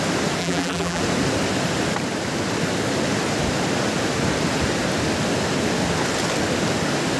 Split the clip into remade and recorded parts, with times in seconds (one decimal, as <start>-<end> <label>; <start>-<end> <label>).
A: 0.0-0.4 recorded; 0.4-1.0 remade; 1.0-7.2 recorded